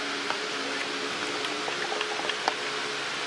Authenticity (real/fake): real